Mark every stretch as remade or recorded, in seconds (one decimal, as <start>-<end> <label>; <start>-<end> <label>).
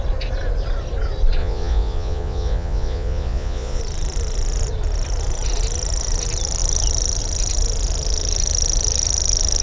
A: 0.0-1.4 recorded; 1.4-3.8 remade; 3.8-9.6 recorded